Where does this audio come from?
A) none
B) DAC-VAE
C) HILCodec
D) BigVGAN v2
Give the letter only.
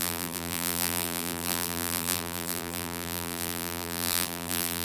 D